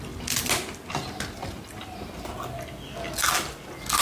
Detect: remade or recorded recorded